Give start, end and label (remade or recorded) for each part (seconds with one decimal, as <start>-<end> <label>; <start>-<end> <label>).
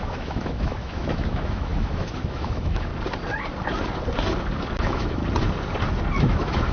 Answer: 0.0-2.9 remade; 2.9-4.8 recorded; 4.8-5.2 remade; 5.2-6.3 recorded; 6.3-6.7 remade